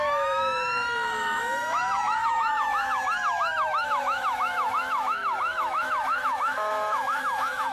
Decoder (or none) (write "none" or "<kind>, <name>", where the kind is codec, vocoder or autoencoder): autoencoder, DAC-VAE